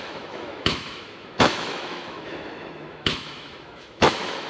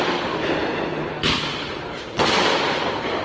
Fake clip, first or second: first